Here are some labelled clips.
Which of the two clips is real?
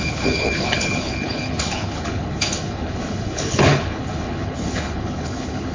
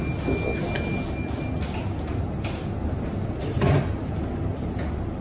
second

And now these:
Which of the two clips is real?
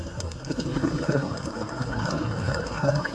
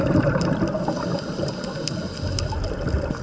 second